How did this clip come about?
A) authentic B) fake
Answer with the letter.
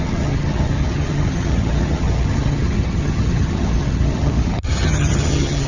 B